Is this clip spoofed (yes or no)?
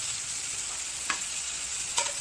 yes